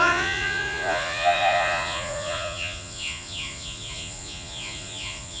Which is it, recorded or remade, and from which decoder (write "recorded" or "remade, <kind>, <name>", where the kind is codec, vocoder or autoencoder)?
remade, vocoder, Vocos